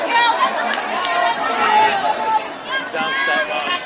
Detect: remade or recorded recorded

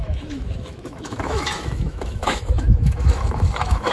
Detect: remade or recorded remade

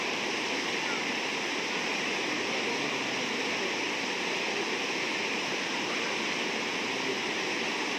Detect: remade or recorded recorded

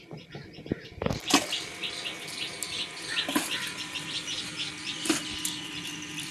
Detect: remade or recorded recorded